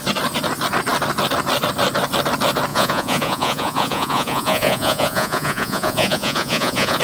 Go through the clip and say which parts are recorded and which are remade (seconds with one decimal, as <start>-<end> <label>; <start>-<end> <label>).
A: 0.0-2.7 recorded; 2.7-7.0 remade